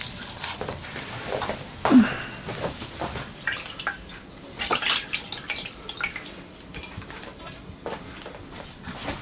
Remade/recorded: recorded